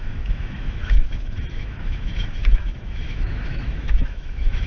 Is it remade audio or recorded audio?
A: remade